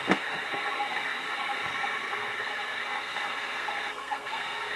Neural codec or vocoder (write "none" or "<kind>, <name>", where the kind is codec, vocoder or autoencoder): codec, SNAC